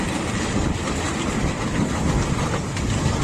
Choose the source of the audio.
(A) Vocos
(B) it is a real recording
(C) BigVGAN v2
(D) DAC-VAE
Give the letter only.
B